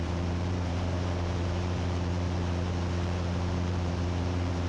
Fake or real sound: fake